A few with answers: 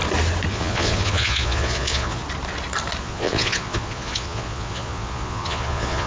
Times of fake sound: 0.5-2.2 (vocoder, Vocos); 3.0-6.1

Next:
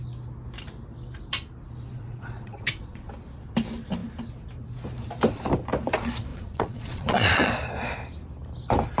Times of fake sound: 1.9-3.1 (vocoder, Vocos); 6.3-7.5

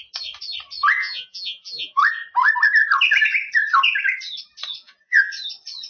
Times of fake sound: 1.0-2.0 (vocoder, Vocos); 4.8-5.3

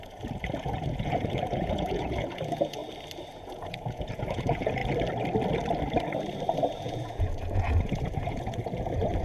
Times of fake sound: 0.0-2.8 (vocoder, Vocos); 3.4-4.8; 6.7-9.2

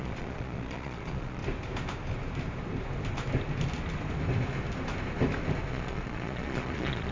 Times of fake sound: 0.0-1.4 (vocoder, Vocos); 5.7-7.1